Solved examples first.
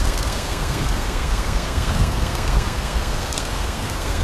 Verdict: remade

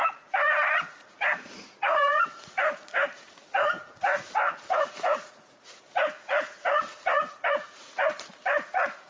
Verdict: remade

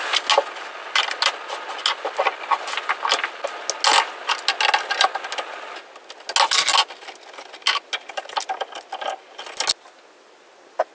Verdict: recorded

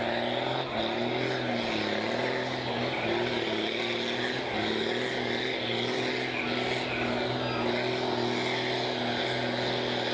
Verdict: recorded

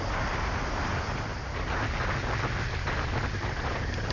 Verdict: recorded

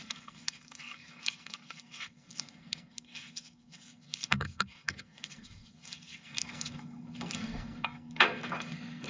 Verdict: remade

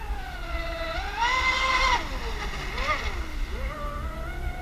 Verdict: recorded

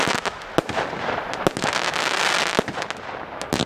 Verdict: recorded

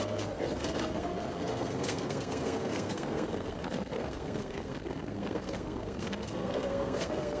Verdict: remade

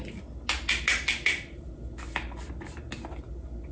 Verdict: recorded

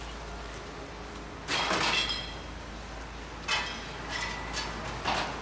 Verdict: recorded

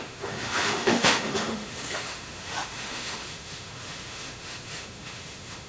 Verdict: remade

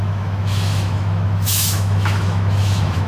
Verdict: remade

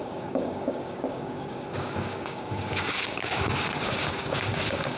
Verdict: remade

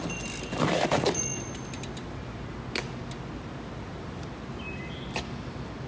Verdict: recorded